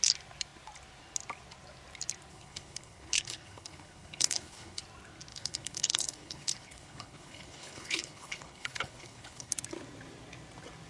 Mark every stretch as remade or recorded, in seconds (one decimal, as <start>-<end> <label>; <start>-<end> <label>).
0.0-2.3 recorded; 2.3-4.8 remade; 4.8-5.3 recorded; 5.3-9.5 remade; 9.5-10.9 recorded